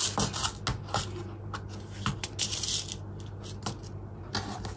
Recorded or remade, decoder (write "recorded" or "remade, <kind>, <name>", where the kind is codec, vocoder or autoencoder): recorded